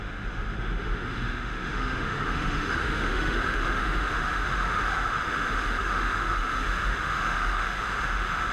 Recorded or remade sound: remade